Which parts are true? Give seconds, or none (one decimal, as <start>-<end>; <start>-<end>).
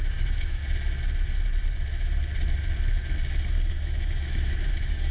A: 0.6-3.7